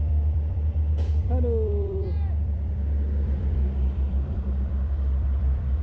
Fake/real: fake